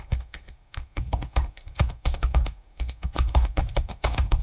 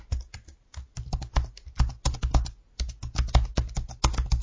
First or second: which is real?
second